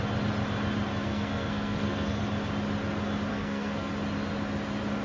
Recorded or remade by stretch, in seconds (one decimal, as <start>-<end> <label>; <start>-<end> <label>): 0.0-0.9 recorded; 0.9-2.2 remade; 2.2-3.3 recorded; 3.3-3.9 remade; 3.9-5.0 recorded